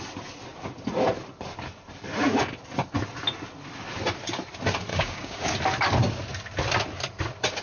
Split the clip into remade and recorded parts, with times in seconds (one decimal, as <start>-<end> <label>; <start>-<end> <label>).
0.0-4.9 recorded; 4.9-5.5 remade; 5.5-7.6 recorded